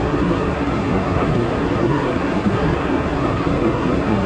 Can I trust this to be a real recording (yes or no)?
no